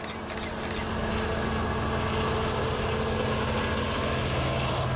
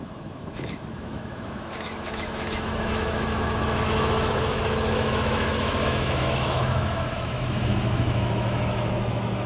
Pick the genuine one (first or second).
first